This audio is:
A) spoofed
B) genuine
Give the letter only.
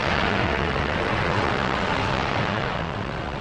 A